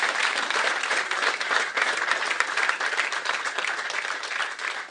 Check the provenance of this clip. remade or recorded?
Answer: remade